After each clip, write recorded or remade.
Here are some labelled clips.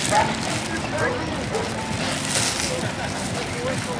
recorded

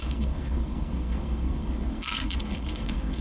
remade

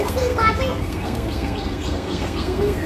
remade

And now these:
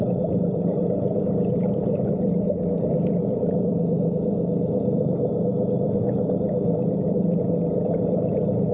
remade